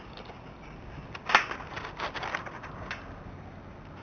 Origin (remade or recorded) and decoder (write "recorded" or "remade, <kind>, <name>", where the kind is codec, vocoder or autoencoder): recorded